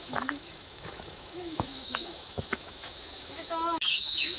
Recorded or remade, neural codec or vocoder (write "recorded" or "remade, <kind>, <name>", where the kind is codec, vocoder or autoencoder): remade, autoencoder, DAC-VAE